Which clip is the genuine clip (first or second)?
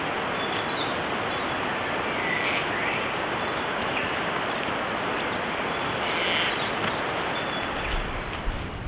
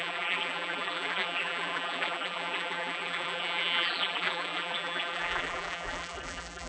first